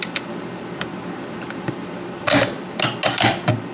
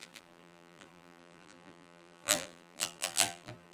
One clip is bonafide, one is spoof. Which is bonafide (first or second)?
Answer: first